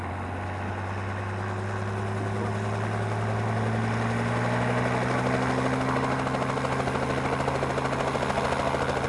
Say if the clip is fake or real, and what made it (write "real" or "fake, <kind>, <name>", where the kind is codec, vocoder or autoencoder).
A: real